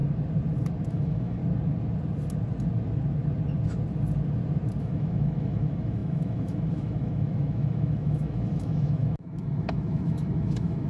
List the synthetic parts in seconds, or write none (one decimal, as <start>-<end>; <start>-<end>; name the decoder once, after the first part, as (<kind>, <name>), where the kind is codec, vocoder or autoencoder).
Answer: 0.9-1.4 (autoencoder, DAC-VAE); 4.8-10.9